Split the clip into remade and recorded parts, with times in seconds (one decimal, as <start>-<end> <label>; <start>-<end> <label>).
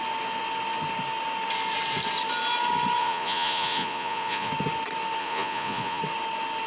0.0-3.0 recorded; 3.0-4.5 remade; 4.5-5.2 recorded; 5.2-6.0 remade; 6.0-6.7 recorded